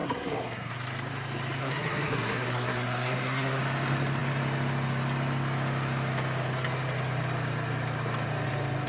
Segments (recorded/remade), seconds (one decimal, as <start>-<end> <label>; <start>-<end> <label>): 0.0-0.7 remade; 0.7-1.6 recorded; 1.6-3.6 remade; 3.6-8.9 recorded